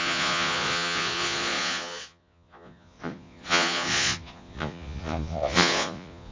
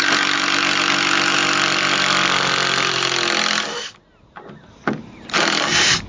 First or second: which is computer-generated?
first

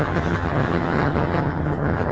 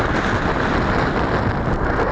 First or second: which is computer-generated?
first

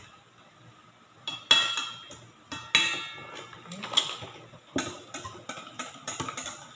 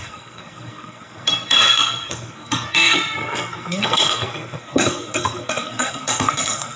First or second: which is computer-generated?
second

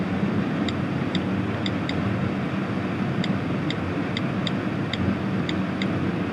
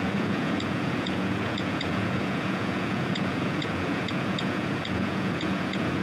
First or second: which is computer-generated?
second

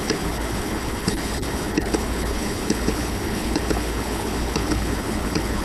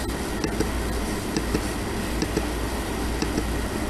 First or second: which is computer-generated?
first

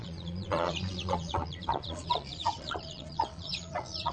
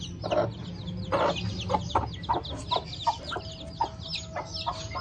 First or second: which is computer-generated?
first